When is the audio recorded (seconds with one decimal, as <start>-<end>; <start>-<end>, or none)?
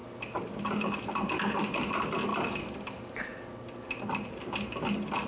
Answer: 0.0-5.3